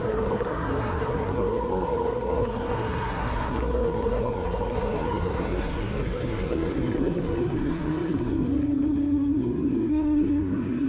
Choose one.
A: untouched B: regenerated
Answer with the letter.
B